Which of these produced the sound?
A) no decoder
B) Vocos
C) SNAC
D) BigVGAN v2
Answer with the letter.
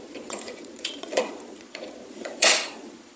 B